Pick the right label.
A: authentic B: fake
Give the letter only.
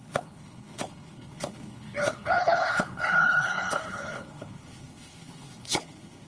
B